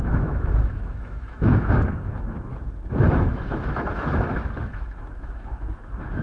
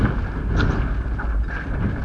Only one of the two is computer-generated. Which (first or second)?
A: first